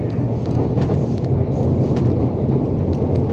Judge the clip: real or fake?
real